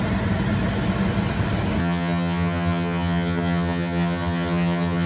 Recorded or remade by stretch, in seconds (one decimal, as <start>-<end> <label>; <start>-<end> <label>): 0.0-1.8 recorded; 1.8-5.1 remade